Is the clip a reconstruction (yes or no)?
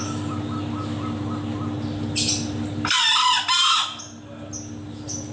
no